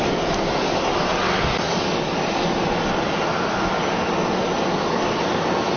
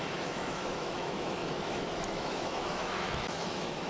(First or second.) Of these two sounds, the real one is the first